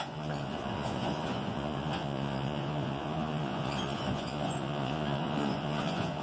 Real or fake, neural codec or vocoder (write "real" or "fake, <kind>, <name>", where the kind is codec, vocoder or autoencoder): fake, vocoder, Vocos